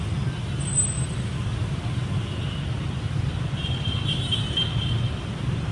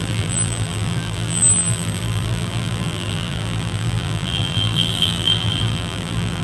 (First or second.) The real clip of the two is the first